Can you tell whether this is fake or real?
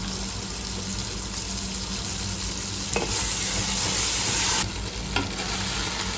real